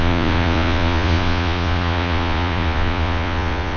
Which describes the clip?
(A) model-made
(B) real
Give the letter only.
A